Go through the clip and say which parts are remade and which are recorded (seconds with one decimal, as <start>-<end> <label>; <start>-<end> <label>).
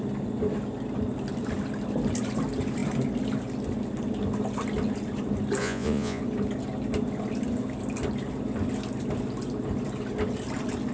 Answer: 0.0-5.6 recorded; 5.6-6.2 remade; 6.2-10.9 recorded